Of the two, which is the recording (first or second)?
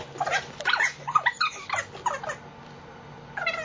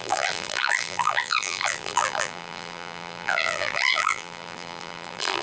first